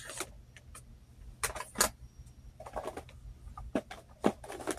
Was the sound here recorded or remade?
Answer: recorded